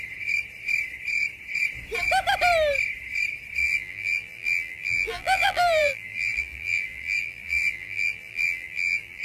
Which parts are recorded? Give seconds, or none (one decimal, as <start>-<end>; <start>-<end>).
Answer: 0.0-3.6